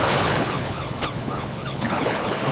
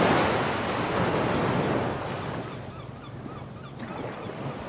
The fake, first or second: first